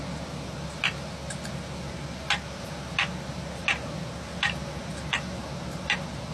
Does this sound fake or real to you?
real